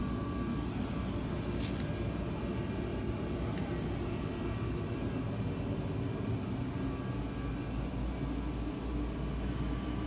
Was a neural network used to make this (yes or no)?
no